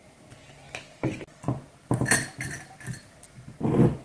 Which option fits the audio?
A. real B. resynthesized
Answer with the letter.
A